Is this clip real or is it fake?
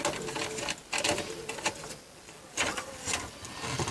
real